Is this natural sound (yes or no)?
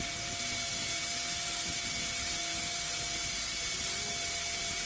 yes